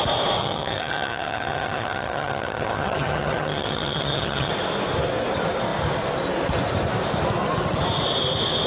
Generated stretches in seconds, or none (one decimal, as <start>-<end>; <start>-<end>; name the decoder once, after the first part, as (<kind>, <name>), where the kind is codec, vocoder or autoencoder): 0.4-4.5 (vocoder, HiFi-GAN)